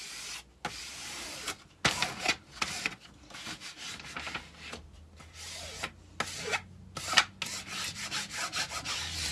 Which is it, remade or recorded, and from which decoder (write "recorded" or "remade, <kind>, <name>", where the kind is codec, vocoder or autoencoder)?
recorded